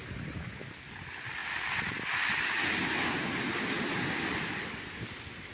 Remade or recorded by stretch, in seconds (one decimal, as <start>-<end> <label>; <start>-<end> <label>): 0.0-5.5 recorded